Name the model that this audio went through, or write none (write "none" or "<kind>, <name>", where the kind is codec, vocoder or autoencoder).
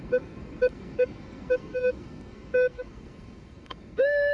codec, SNAC